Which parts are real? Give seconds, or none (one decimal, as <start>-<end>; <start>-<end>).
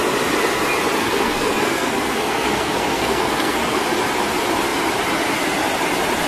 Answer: 0.0-1.0; 3.8-6.3